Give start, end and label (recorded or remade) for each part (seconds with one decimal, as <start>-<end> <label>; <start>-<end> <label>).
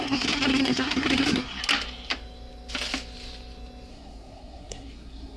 0.0-1.6 remade; 1.6-3.9 recorded; 3.9-5.4 remade